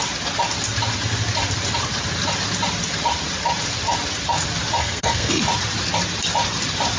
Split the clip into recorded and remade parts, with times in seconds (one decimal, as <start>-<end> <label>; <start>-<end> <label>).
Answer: 0.0-4.8 recorded; 4.8-5.4 remade; 5.4-7.0 recorded